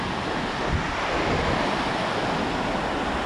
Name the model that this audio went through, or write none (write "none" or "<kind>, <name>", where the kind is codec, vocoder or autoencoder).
none